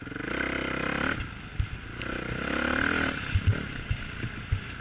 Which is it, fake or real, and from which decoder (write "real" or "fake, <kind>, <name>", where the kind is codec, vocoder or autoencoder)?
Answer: real